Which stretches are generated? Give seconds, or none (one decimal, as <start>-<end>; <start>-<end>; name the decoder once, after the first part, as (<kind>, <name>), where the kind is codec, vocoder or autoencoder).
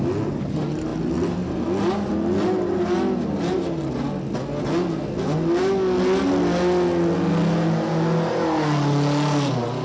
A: none